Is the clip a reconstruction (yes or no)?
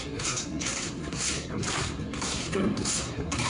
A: yes